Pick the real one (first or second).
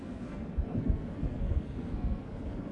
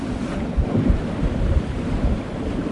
second